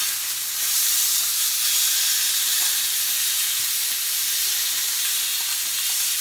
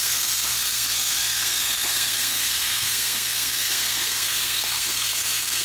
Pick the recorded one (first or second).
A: first